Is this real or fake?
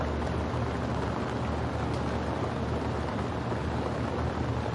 real